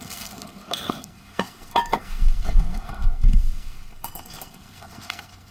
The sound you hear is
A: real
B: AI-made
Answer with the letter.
B